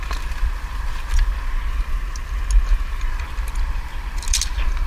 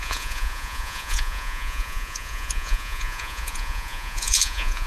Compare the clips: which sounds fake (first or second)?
second